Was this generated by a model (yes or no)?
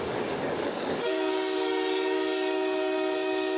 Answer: yes